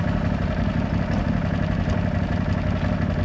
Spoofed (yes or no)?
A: no